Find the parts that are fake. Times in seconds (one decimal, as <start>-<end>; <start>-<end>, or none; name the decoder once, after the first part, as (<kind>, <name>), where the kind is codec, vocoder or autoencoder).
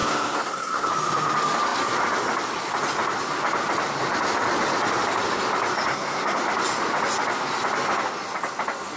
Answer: 0.0-0.9 (codec, SNAC); 5.9-6.4